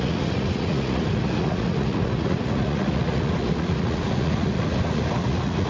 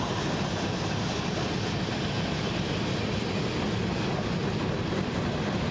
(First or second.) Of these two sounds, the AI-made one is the first